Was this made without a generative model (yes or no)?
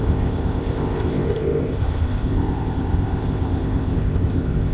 no